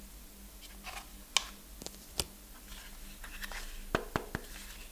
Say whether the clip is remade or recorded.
recorded